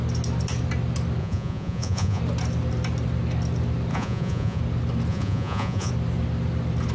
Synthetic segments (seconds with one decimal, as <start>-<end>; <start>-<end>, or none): 1.2-2.2; 3.9-4.6; 5.1-5.9